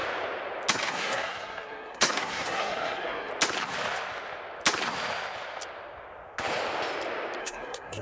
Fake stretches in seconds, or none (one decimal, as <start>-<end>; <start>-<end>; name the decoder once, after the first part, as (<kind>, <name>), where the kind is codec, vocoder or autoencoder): 0.7-3.3 (codec, SNAC); 7.4-8.0